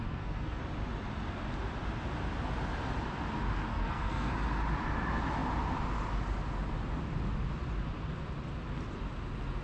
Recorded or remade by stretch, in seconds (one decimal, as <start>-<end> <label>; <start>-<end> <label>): 0.0-0.6 remade; 0.6-3.7 recorded; 3.7-4.3 remade; 4.3-9.6 recorded